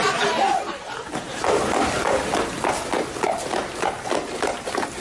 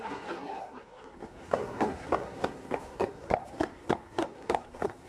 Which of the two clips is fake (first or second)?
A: second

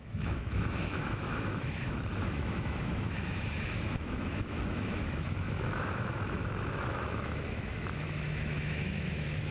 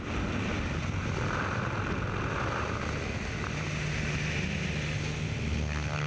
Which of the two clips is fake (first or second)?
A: first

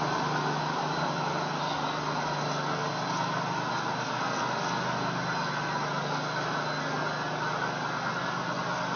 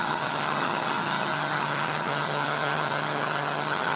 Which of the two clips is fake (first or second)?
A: second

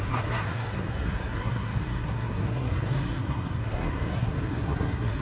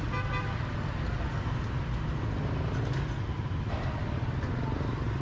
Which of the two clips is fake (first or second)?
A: first